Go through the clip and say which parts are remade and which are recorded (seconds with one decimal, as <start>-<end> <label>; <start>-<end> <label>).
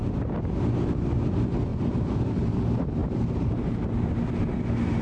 0.0-1.7 recorded; 1.7-2.6 remade; 2.6-3.0 recorded; 3.0-3.8 remade; 3.8-5.0 recorded